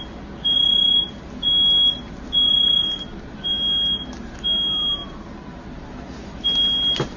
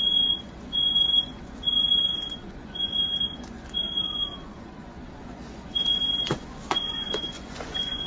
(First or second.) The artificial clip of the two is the second